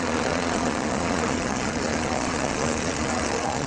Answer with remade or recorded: remade